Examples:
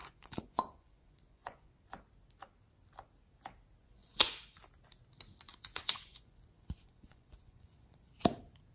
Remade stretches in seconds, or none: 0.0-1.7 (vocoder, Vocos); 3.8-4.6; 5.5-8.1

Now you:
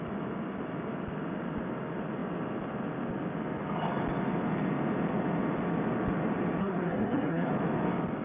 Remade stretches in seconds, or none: 6.6-7.5 (codec, SNAC)